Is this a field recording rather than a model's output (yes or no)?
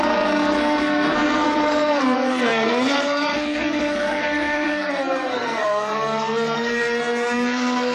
no